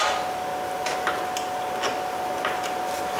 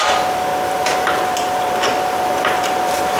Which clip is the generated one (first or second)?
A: second